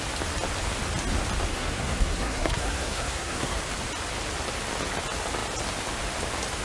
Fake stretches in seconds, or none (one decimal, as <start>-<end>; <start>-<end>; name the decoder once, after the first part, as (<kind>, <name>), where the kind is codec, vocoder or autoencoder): 1.5-3.6 (codec, SNAC)